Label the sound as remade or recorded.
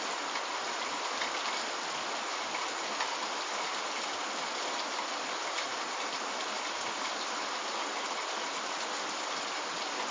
recorded